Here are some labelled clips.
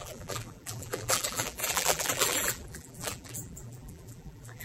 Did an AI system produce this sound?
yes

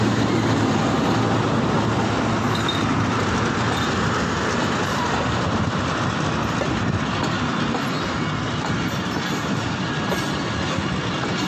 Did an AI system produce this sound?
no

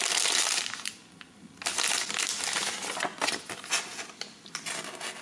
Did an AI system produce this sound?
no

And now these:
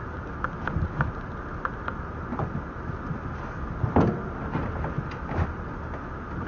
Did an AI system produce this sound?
no